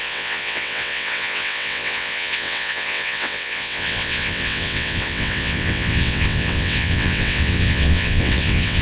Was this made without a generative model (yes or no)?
no